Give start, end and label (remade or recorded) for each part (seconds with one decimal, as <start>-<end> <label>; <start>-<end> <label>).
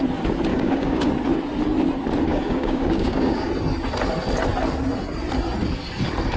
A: 0.0-0.5 recorded; 0.5-1.1 remade; 1.1-2.3 recorded; 2.3-3.5 remade; 3.5-6.4 recorded